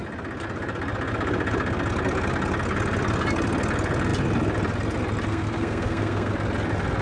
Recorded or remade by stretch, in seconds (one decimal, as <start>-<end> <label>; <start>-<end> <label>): 0.0-5.3 recorded; 5.3-6.3 remade; 6.3-7.0 recorded